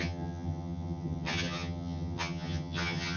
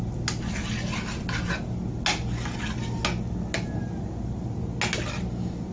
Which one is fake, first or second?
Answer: first